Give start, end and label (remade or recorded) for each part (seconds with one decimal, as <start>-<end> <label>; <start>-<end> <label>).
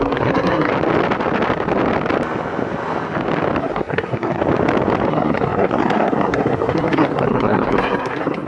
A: 0.0-0.7 remade; 0.7-3.6 recorded; 3.6-4.4 remade; 4.4-5.1 recorded; 5.1-8.5 remade